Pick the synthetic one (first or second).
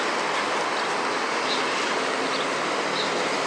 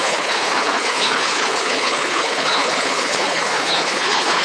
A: second